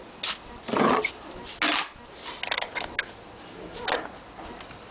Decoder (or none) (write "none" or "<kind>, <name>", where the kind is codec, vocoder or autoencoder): none